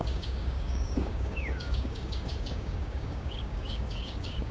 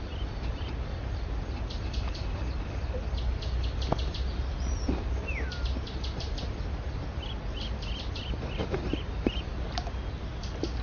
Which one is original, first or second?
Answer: second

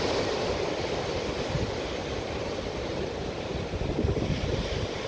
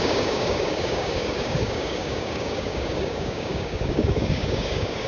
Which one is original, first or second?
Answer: first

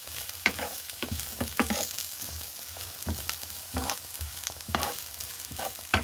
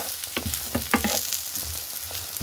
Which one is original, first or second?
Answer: second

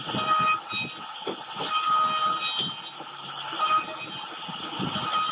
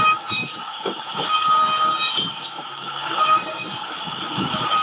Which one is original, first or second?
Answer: first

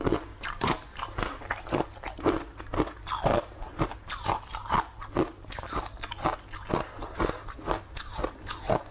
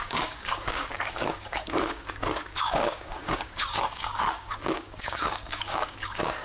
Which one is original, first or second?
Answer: first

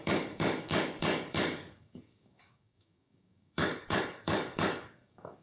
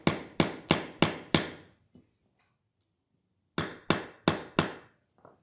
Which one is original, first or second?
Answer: second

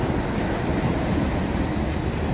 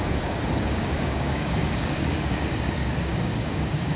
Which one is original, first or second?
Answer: first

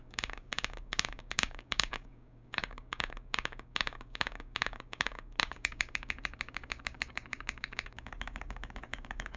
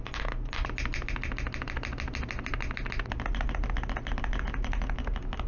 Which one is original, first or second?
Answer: second